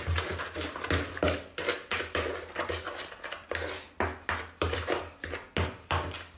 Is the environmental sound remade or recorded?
recorded